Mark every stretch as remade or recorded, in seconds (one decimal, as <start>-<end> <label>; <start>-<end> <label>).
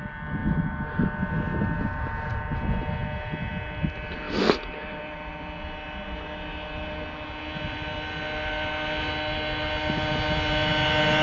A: 0.0-11.2 recorded